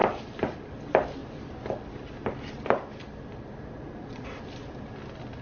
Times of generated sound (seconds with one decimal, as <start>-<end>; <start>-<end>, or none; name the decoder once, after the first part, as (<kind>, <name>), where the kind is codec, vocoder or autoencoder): 0.0-0.7 (vocoder, BigVGAN v2); 1.2-4.4